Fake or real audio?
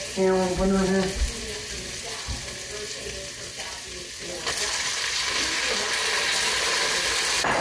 real